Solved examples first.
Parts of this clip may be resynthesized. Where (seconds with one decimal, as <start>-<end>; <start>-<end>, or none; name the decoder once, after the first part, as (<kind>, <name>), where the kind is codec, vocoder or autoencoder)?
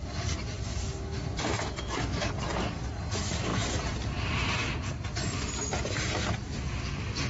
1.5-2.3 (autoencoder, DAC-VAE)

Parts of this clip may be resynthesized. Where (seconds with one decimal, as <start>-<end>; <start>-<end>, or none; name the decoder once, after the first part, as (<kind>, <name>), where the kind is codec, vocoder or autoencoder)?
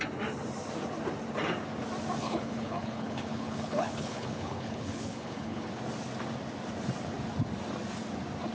2.2-5.8 (codec, HILCodec)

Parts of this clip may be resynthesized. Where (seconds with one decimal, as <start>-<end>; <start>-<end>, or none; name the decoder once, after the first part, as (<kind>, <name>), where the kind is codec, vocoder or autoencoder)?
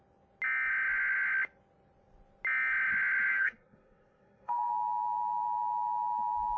3.3-4.7 (codec, SNAC)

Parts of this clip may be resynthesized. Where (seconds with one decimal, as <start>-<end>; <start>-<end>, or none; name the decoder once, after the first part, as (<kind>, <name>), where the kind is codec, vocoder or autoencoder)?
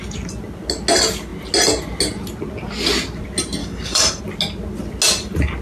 3.6-4.2 (codec, DAC)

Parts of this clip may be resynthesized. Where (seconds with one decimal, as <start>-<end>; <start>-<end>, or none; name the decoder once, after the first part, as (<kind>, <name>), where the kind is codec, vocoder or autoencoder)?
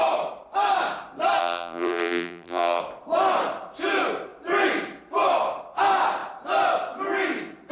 1.4-2.8 (vocoder, BigVGAN v2)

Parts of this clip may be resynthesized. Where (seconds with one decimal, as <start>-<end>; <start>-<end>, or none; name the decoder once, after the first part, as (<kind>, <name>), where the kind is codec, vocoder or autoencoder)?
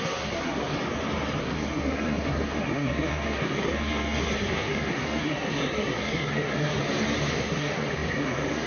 0.0-0.7 (codec, SNAC); 1.4-6.8; 7.3-8.7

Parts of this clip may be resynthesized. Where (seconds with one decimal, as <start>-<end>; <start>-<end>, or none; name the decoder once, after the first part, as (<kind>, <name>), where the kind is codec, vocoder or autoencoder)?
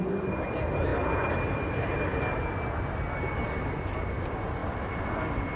none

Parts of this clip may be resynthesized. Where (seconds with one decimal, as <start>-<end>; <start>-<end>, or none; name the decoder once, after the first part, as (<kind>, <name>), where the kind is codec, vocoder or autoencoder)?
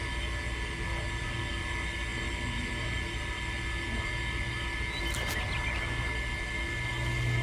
none